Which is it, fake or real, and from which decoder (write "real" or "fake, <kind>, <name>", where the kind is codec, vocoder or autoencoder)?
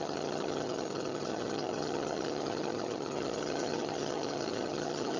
fake, vocoder, HiFi-GAN